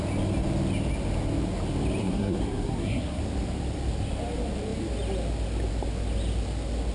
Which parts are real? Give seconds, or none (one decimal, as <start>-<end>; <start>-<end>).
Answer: 0.0-2.0; 3.2-6.9